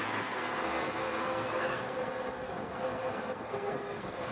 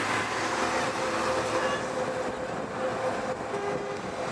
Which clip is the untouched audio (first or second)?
second